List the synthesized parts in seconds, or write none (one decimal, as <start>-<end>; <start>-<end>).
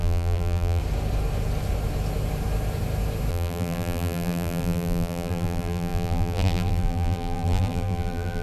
0.0-0.8; 3.3-8.4